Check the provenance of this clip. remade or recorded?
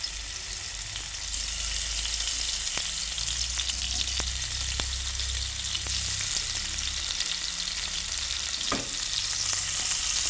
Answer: recorded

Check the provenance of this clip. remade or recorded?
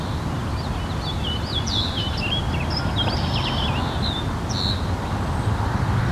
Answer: recorded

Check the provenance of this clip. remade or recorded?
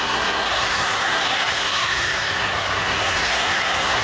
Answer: remade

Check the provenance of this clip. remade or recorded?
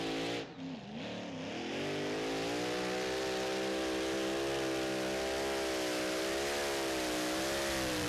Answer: recorded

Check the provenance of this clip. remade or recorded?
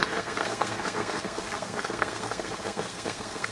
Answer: remade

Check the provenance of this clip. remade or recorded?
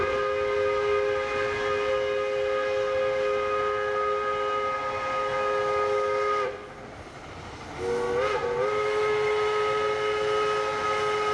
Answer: recorded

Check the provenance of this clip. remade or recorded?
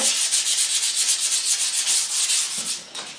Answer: recorded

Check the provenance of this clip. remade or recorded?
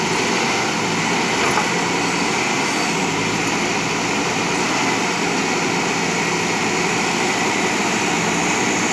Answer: recorded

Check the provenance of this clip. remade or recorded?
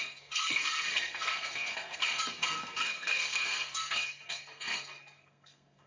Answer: remade